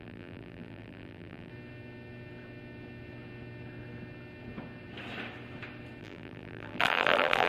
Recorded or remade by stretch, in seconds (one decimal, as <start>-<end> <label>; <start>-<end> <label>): 0.0-1.5 remade; 1.5-6.0 recorded; 6.0-7.5 remade